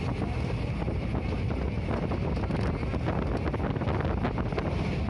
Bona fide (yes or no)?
yes